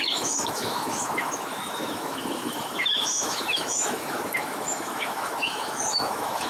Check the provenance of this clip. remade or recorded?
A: remade